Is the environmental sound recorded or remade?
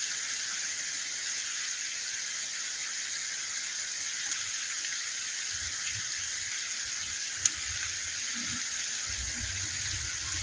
recorded